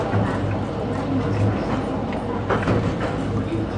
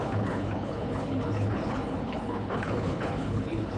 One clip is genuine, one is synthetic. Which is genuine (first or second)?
first